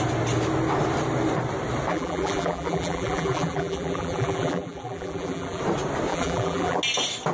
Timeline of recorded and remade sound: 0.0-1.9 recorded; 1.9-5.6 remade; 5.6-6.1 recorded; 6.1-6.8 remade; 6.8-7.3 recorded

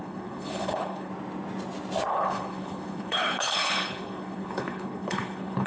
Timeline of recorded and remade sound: 0.0-1.1 remade; 1.1-2.1 recorded; 2.1-5.7 remade